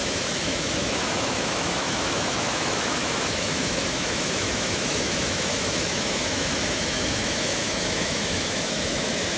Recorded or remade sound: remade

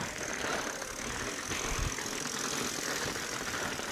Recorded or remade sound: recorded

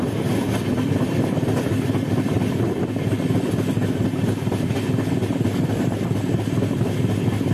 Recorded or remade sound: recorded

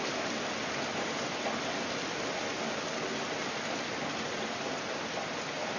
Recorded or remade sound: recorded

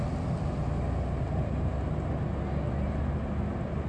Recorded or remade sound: recorded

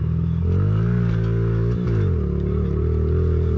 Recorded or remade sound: recorded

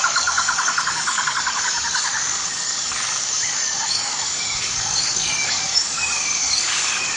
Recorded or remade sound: remade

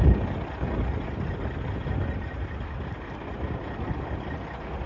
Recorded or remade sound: recorded